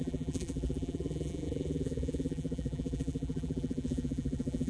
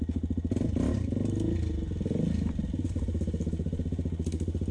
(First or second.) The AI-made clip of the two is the first